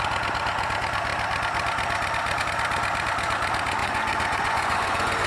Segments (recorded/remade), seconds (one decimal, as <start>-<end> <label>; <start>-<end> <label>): 0.0-3.8 recorded; 3.8-5.3 remade